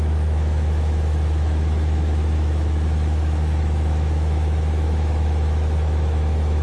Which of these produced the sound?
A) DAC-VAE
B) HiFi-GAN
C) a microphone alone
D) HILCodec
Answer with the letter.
A